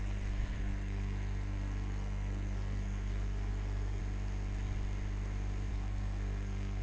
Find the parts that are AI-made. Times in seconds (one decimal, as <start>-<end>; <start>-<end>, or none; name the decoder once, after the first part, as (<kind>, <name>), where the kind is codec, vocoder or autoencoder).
0.0-4.0 (codec, SNAC); 5.7-6.8